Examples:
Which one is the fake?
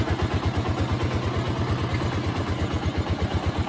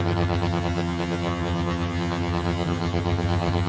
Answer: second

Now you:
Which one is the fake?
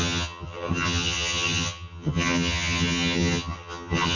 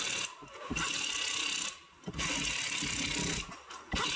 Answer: first